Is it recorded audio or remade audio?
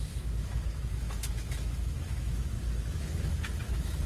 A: remade